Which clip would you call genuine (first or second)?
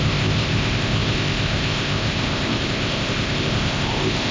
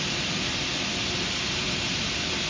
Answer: second